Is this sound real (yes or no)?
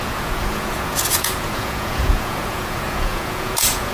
no